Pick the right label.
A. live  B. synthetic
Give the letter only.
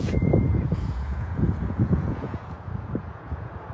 B